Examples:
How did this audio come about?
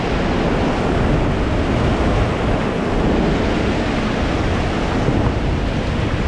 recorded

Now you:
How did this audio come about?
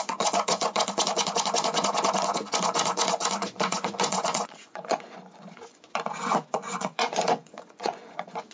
remade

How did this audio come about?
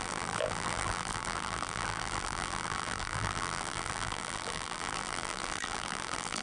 remade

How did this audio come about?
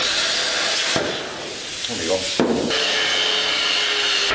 recorded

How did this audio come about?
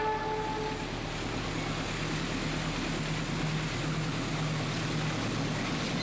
recorded